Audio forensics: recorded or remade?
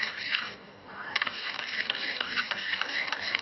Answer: remade